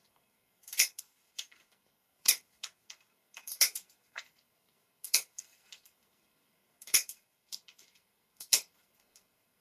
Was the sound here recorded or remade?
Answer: remade